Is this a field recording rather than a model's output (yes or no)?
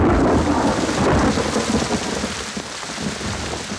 yes